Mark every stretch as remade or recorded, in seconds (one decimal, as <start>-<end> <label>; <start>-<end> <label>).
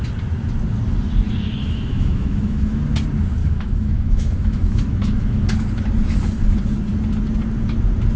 0.0-1.6 recorded; 1.6-2.8 remade; 2.8-3.4 recorded; 3.4-5.4 remade; 5.4-8.2 recorded